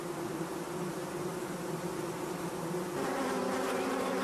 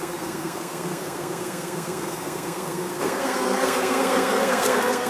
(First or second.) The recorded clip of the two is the first